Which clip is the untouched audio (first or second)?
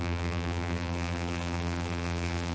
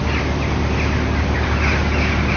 second